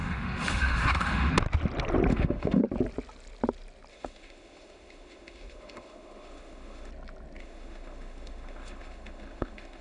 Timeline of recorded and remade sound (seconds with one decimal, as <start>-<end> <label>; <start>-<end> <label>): 0.0-1.3 remade; 1.3-2.1 recorded; 2.1-2.6 remade; 2.6-3.9 recorded; 3.9-6.9 remade; 6.9-7.4 recorded; 7.4-9.8 remade